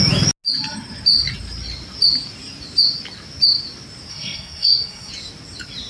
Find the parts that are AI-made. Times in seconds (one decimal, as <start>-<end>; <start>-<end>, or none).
4.1-5.1

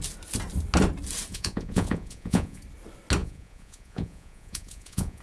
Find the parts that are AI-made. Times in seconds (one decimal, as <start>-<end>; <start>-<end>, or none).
1.3-2.6; 3.2-5.2

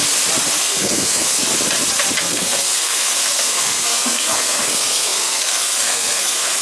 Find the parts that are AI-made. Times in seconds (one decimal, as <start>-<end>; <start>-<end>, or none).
0.6-1.4; 2.2-6.6

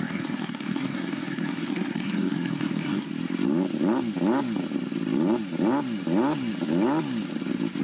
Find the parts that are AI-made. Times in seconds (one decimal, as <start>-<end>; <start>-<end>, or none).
0.0-3.1

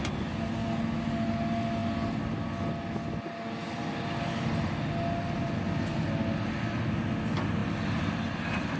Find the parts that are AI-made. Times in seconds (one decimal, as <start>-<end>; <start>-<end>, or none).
none

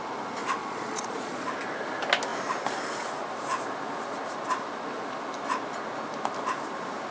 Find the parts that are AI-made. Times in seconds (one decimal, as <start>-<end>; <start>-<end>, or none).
0.6-1.4